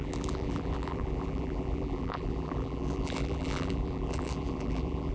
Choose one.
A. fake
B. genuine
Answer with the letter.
A